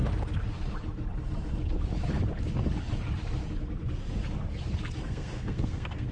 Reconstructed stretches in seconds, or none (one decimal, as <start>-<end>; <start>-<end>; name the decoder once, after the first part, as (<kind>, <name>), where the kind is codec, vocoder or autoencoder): 5.0-6.1 (codec, SNAC)